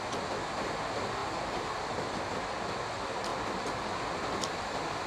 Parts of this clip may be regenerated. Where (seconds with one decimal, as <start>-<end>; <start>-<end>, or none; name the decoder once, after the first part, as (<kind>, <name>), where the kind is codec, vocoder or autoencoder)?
1.2-2.4 (vocoder, BigVGAN v2); 3.3-4.6